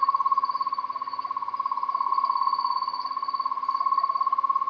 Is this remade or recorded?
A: recorded